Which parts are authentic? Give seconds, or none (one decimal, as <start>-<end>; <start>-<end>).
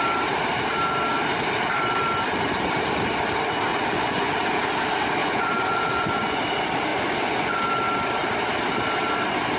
0.0-3.7; 4.3-5.2; 6.4-6.9; 7.6-9.6